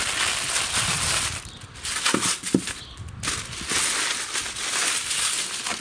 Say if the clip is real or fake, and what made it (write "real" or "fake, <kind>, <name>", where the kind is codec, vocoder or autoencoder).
real